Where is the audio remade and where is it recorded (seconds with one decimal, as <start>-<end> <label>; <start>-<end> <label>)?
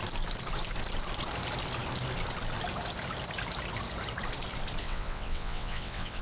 0.0-4.8 recorded; 4.8-6.2 remade